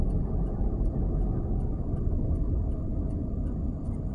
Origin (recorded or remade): recorded